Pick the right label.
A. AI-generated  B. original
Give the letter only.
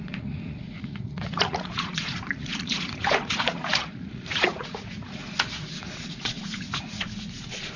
A